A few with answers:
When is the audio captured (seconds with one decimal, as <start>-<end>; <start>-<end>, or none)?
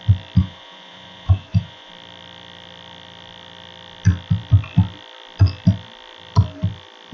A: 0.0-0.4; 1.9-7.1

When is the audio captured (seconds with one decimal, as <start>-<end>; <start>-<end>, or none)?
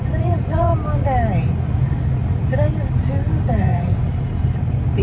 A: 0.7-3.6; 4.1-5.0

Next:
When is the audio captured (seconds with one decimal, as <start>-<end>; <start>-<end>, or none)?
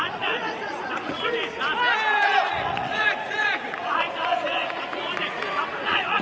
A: 1.4-2.4